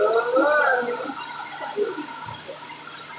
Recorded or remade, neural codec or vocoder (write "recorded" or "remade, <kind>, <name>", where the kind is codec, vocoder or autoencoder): recorded